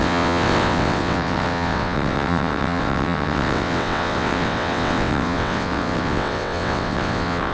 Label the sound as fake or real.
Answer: fake